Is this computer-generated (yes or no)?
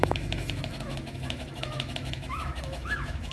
yes